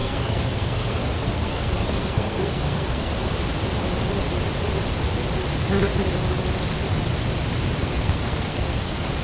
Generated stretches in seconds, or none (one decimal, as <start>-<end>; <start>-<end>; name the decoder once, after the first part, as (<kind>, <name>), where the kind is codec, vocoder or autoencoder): 0.0-3.1 (codec, SNAC); 7.8-9.2